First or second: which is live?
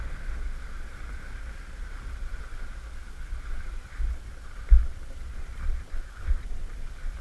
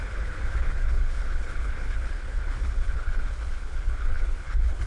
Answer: first